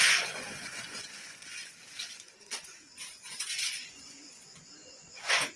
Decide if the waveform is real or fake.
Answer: fake